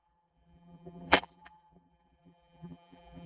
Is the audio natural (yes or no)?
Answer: no